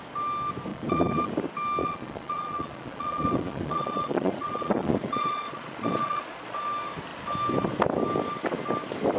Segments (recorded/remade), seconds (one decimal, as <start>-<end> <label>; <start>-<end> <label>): 0.0-0.7 recorded; 0.7-1.3 remade; 1.3-1.8 recorded; 1.8-6.6 remade; 6.6-9.2 recorded